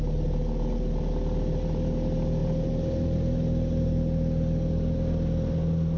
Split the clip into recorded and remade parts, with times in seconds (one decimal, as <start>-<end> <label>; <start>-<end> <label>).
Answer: 0.0-6.0 recorded